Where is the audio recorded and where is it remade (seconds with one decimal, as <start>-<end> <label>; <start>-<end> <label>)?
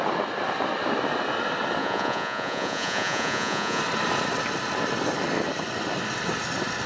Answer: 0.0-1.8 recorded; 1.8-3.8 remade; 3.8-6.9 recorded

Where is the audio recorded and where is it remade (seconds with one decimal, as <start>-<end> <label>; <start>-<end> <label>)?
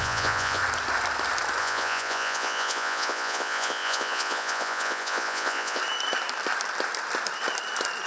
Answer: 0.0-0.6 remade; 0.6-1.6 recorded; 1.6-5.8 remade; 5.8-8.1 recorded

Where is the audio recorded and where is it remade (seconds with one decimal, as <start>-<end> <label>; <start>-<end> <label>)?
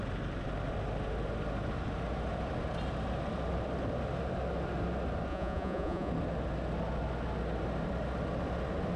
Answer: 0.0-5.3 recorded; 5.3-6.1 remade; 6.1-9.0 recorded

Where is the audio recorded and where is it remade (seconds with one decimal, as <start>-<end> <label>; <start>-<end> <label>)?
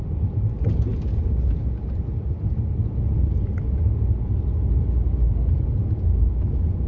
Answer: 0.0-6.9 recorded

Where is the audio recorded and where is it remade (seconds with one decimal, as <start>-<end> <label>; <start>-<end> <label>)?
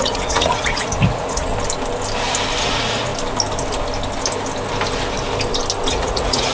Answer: 0.0-1.5 remade; 1.5-2.6 recorded; 2.6-3.1 remade; 3.1-5.9 recorded; 5.9-6.5 remade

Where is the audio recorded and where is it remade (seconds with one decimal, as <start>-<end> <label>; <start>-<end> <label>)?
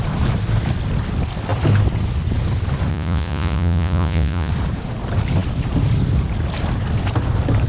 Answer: 0.0-2.9 recorded; 2.9-4.5 remade; 4.5-7.7 recorded